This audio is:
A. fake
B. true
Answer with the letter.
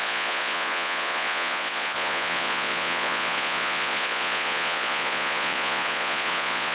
A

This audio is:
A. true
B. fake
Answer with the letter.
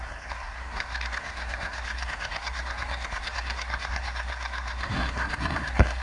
B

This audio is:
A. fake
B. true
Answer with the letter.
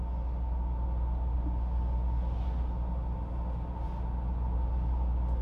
B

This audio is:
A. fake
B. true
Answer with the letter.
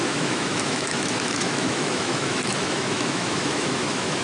A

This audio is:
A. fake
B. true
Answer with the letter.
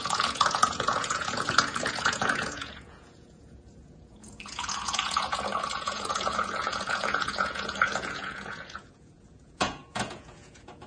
A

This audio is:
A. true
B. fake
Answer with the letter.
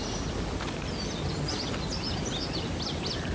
A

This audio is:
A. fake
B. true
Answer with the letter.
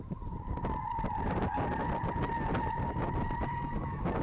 B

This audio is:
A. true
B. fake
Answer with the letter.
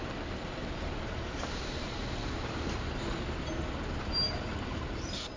A